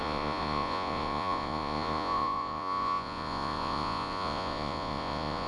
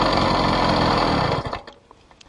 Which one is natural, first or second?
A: second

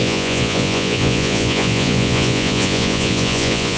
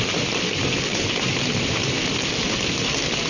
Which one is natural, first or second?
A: second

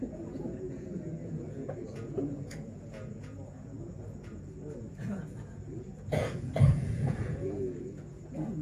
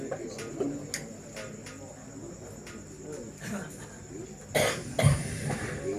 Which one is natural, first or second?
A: second